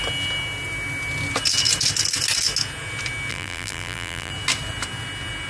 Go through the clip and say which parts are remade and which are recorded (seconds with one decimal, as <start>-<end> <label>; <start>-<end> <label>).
0.0-3.3 recorded; 3.3-4.3 remade; 4.3-5.5 recorded

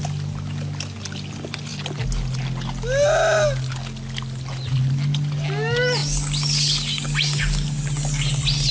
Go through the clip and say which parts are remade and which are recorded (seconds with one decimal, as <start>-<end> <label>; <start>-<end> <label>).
0.0-8.7 recorded

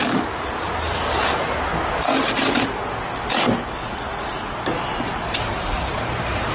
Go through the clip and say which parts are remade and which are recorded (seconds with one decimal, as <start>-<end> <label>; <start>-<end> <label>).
0.0-1.7 remade; 1.7-5.3 recorded; 5.3-6.5 remade